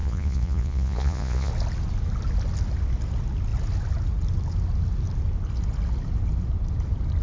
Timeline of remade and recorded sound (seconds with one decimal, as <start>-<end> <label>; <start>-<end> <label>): 0.0-1.5 remade; 1.5-7.2 recorded